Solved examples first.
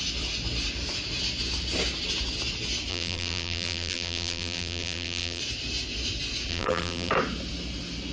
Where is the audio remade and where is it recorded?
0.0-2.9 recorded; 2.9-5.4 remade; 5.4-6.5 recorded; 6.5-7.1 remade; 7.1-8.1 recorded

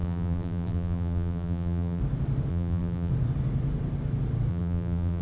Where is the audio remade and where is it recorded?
0.0-2.0 remade; 2.0-2.5 recorded; 2.5-3.1 remade; 3.1-4.5 recorded; 4.5-5.2 remade

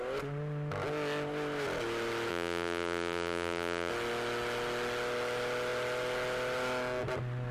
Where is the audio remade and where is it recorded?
0.0-2.3 recorded; 2.3-3.9 remade; 3.9-7.5 recorded

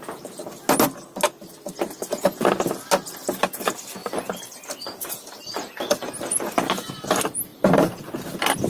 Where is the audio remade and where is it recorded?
0.0-4.0 recorded; 4.0-6.1 remade; 6.1-7.5 recorded; 7.5-8.1 remade; 8.1-8.7 recorded

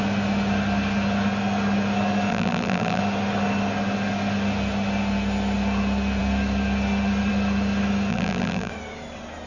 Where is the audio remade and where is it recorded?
0.0-2.3 recorded; 2.3-3.0 remade; 3.0-8.1 recorded; 8.1-8.7 remade; 8.7-9.5 recorded

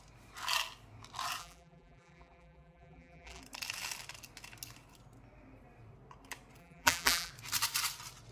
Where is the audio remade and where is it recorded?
0.0-1.4 recorded; 1.4-3.4 remade; 3.4-6.6 recorded; 6.6-7.3 remade; 7.3-8.3 recorded

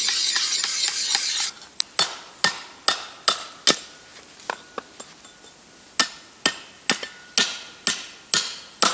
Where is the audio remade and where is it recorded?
0.0-8.9 recorded

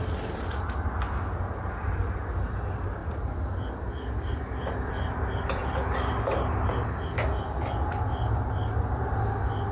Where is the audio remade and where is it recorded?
0.0-9.7 recorded